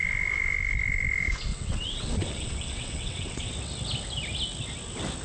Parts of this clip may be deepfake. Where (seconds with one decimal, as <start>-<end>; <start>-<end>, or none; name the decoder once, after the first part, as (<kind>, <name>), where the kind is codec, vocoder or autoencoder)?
1.5-3.5 (vocoder, WaveNeXt)